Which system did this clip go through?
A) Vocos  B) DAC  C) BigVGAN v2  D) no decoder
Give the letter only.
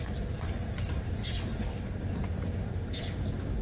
D